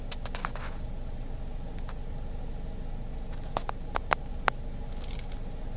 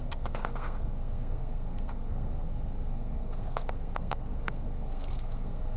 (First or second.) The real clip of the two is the first